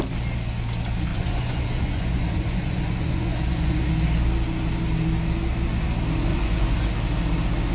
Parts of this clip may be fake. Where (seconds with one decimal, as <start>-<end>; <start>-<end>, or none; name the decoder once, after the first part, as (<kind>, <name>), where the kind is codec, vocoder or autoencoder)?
1.1-3.9 (vocoder, Vocos); 6.3-6.9